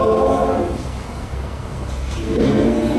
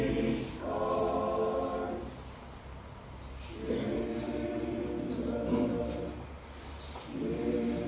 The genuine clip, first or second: second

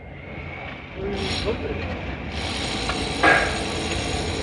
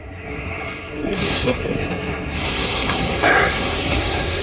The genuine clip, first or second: first